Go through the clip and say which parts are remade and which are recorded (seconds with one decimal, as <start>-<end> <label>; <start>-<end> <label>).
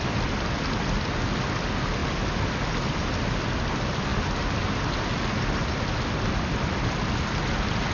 0.0-7.9 recorded